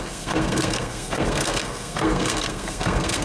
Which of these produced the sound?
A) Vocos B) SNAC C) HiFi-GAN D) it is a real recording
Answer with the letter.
B